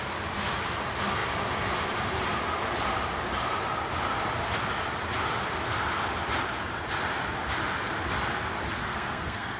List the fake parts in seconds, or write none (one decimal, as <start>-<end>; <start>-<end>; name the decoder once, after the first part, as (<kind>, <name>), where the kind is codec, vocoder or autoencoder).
8.8-9.6 (codec, SNAC)